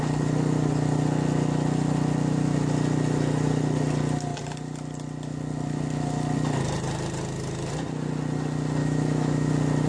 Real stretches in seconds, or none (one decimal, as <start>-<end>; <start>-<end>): 0.0-8.8; 9.5-9.9